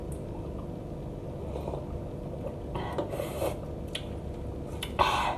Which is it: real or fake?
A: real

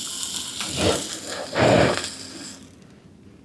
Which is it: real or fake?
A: real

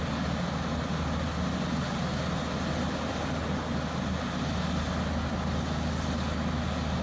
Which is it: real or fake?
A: real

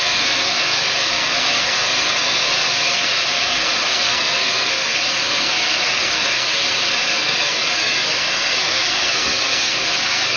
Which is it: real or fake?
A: fake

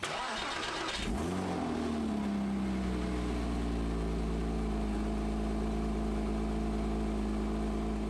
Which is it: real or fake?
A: real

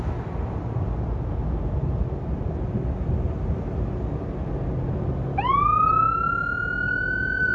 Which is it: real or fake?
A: real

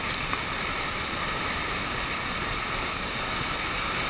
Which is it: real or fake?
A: real